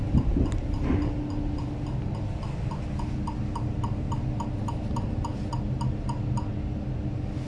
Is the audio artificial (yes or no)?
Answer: no